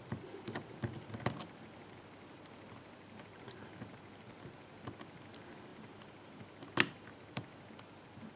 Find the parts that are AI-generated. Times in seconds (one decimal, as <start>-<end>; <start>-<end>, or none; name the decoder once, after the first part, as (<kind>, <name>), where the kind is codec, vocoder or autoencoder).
5.7-7.7 (vocoder, BigVGAN v2)